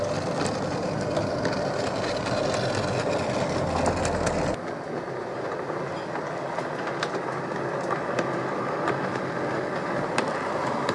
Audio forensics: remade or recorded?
recorded